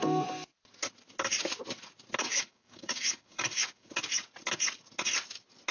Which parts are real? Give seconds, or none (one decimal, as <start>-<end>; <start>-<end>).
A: 0.0-2.2; 3.9-5.7